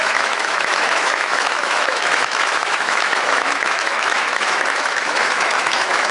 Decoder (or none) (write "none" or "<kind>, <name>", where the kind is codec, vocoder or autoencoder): autoencoder, DAC-VAE